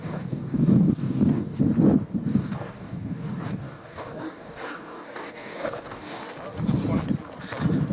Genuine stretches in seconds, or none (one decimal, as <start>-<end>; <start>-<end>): 1.6-2.3; 6.2-7.9